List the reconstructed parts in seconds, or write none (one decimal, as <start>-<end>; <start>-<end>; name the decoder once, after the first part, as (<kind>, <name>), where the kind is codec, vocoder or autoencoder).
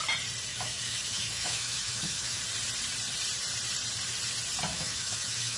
0.5-2.4 (autoencoder, DAC-VAE); 4.7-5.6